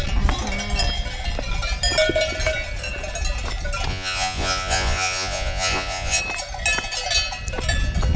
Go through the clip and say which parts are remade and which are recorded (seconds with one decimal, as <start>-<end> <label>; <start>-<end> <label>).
0.0-3.9 recorded; 3.9-6.2 remade; 6.2-8.2 recorded